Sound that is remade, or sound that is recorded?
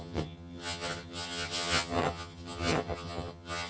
remade